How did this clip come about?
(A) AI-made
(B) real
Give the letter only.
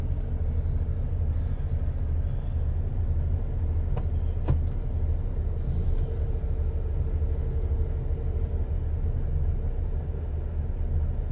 B